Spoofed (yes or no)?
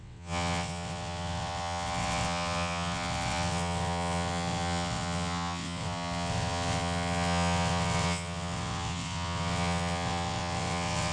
yes